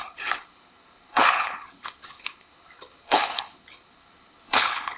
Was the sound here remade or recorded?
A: remade